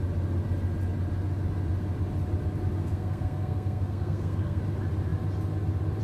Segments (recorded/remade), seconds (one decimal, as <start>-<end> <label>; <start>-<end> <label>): 0.0-2.8 recorded; 2.8-4.6 remade; 4.6-6.0 recorded